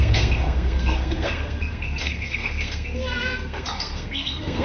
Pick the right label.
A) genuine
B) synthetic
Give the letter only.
B